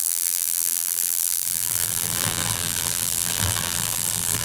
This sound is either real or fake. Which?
fake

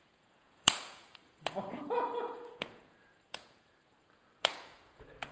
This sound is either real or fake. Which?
fake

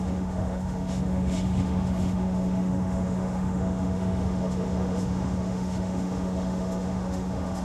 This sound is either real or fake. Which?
fake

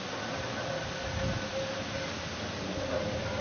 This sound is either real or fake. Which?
real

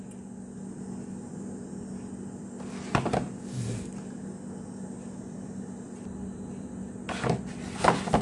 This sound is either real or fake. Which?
real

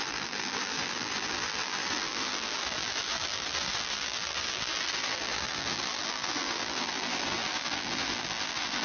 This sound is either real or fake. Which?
fake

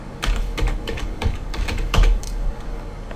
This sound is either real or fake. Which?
fake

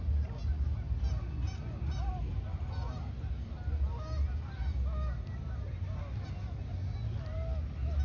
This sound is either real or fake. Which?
real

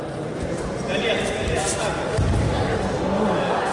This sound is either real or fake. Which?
real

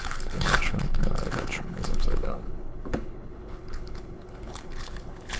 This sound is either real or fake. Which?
fake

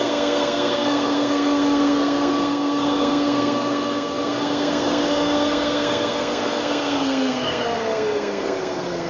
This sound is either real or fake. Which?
fake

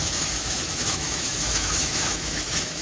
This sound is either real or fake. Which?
fake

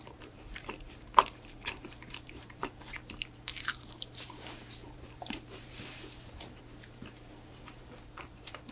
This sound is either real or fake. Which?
fake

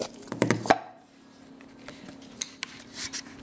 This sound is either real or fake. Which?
real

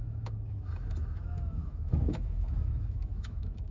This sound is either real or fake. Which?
fake